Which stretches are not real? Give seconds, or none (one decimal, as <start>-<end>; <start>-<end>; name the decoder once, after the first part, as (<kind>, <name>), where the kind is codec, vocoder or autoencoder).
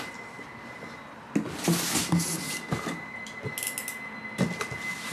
2.0-3.5 (vocoder, BigVGAN v2)